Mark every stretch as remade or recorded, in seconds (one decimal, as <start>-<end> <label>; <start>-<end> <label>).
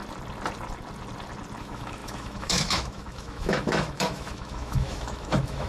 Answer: 0.0-1.6 recorded; 1.6-5.7 remade